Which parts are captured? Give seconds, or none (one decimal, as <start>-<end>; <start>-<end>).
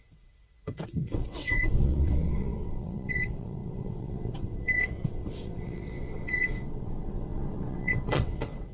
none